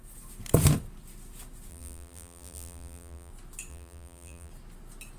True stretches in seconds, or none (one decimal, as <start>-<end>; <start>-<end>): 0.0-1.7; 3.3-3.7; 4.5-5.2

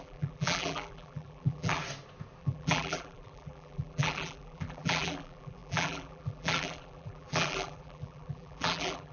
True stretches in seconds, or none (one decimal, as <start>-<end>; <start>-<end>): 1.8-2.4

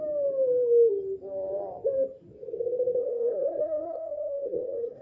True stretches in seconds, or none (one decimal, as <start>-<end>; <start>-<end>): 0.0-3.0

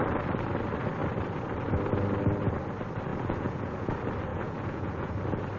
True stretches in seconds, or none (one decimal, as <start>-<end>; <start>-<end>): 0.0-3.1; 3.9-4.3; 5.1-5.6

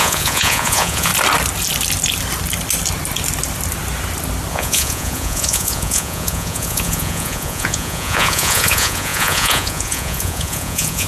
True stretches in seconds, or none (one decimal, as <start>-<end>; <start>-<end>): 1.1-4.5

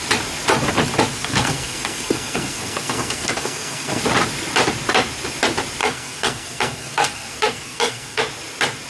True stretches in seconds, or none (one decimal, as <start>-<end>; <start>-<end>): 0.0-1.1; 4.0-5.8; 8.2-8.9